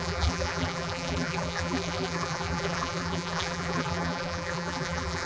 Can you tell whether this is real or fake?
fake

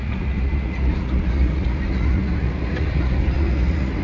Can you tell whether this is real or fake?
fake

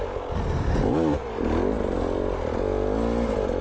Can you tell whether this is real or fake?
real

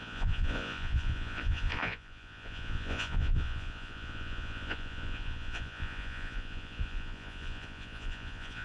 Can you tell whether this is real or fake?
fake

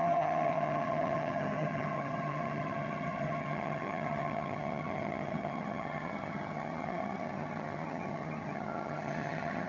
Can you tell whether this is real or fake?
fake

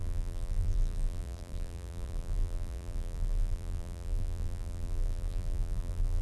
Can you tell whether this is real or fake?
fake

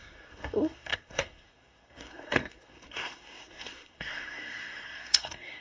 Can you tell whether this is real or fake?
fake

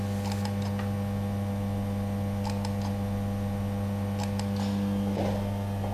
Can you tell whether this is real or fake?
real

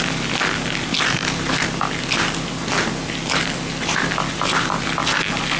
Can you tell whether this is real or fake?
real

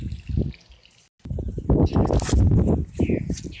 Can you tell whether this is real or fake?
real